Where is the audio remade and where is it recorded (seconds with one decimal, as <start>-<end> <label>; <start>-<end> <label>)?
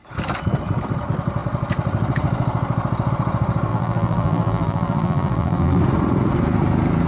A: 0.0-3.7 recorded; 3.7-5.8 remade; 5.8-7.1 recorded